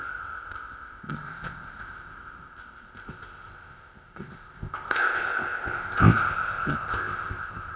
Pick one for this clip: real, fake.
fake